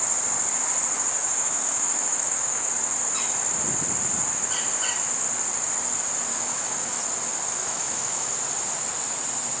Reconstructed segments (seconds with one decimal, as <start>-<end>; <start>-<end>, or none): 1.2-2.7; 6.3-7.0; 7.6-8.3